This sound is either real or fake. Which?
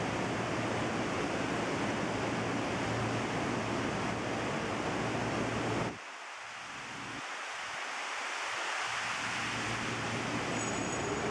real